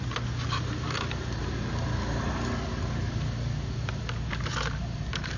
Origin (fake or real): real